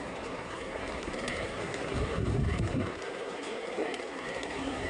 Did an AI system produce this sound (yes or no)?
yes